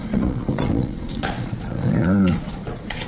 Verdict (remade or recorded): remade